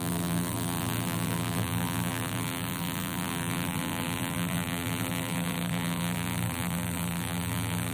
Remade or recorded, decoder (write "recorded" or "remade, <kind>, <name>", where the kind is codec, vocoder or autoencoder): remade, vocoder, BigVGAN v2